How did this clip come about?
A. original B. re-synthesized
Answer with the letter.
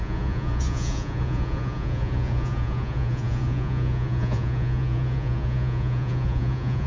B